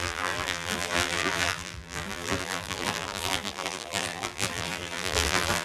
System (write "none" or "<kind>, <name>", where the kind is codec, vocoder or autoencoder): vocoder, BigVGAN v2